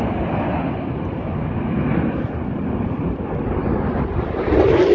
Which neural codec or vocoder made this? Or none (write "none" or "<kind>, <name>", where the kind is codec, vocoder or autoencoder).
none